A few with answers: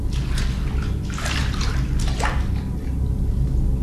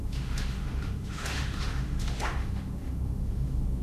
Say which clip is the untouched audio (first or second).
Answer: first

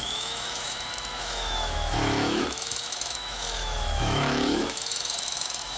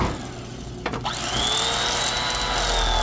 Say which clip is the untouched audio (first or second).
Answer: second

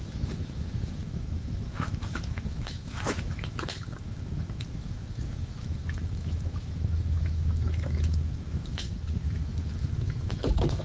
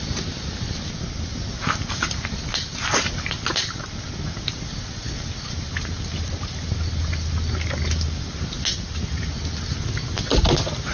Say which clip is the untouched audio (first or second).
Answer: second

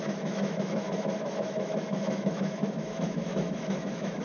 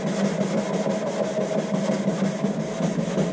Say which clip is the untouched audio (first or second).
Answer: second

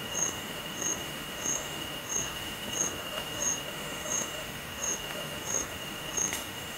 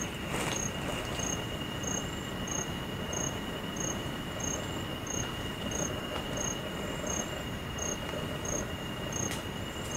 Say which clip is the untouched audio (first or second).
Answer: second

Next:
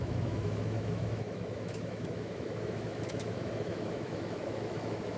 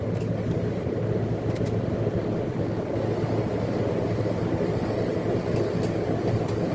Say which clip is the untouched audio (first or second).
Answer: second